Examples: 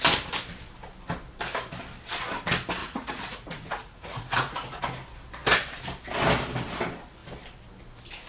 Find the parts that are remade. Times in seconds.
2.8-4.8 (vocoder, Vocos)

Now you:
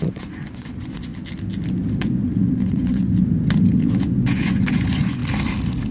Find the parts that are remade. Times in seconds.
0.0-1.1 (vocoder, Vocos); 2.0-3.1; 3.9-5.2

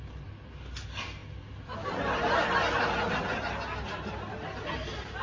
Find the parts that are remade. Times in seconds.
none

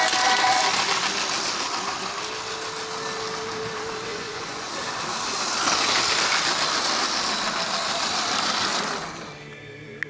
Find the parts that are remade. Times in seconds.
4.1-4.7 (vocoder, Vocos)